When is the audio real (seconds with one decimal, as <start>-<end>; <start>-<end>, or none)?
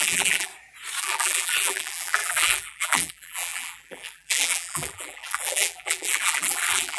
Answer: 0.5-1.0